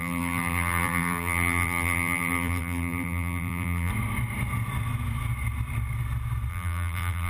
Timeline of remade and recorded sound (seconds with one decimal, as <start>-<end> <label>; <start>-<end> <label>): 0.0-3.9 remade; 3.9-6.5 recorded; 6.5-7.3 remade